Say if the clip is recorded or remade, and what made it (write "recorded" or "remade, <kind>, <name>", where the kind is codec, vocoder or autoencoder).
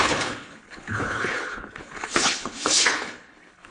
remade, codec, HILCodec